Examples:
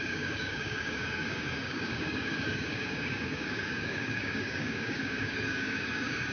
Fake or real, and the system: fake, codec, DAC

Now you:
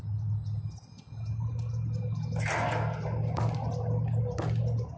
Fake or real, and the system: real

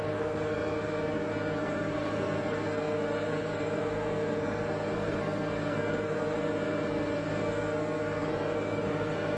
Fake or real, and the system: fake, codec, SNAC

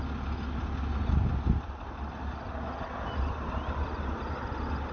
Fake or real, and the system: real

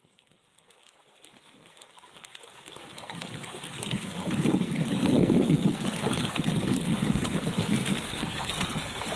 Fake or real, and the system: fake, codec, SNAC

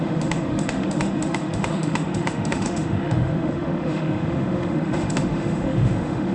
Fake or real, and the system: fake, autoencoder, DAC-VAE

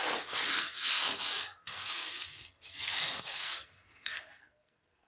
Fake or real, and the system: fake, codec, SNAC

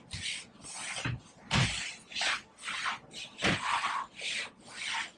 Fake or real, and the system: real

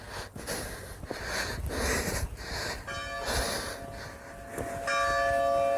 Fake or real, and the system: real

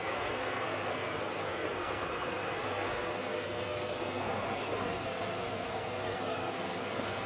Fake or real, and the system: fake, codec, SNAC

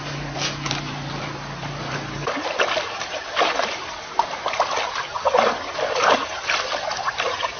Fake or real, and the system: real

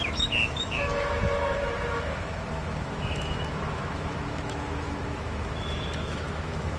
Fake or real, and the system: fake, autoencoder, DAC-VAE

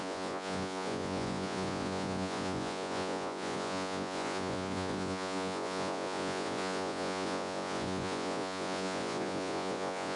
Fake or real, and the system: fake, vocoder, Vocos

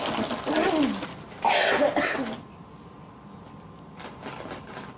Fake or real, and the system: real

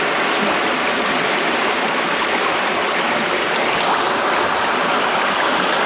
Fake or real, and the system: real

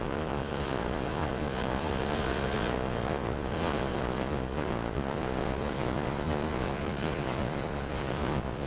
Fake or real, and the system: fake, vocoder, Vocos